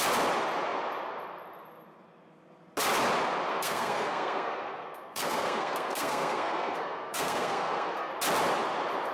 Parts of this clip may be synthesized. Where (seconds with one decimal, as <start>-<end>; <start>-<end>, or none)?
3.5-8.1